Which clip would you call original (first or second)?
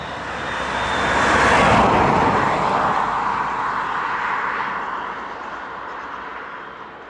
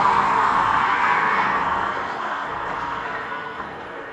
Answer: first